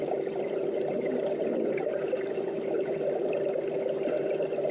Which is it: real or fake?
real